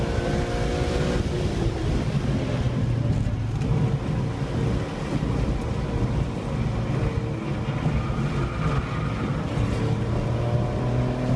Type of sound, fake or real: real